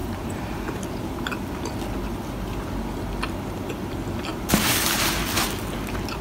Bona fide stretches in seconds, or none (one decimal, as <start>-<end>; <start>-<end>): 1.3-4.3; 5.2-6.2